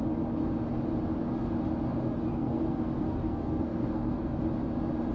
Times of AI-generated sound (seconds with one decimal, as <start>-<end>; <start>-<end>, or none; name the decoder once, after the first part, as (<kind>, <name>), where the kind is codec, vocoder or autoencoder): 2.3-4.4 (codec, SNAC)